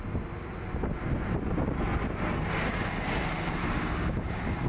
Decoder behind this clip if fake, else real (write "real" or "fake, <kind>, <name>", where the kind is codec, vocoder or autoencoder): real